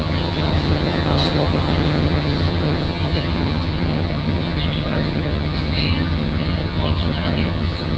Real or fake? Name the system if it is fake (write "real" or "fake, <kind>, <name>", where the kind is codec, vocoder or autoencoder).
fake, vocoder, HiFi-GAN